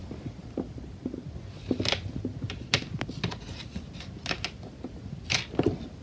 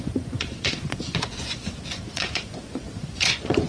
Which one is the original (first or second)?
first